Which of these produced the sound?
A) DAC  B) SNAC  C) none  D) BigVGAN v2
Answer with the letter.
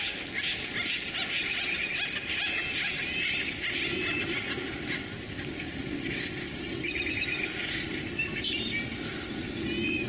C